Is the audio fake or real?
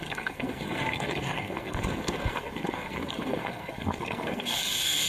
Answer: fake